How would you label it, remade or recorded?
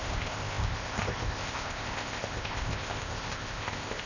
remade